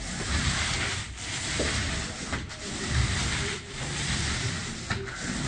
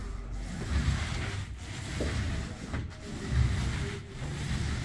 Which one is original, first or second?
second